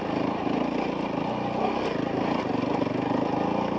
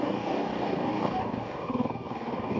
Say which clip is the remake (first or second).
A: second